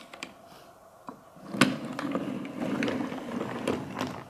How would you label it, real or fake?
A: real